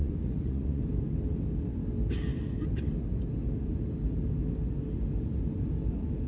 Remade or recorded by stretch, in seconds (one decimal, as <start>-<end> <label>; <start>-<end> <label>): 0.0-0.8 remade; 0.8-6.3 recorded